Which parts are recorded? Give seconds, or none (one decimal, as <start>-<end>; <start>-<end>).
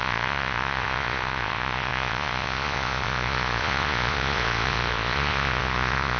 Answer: none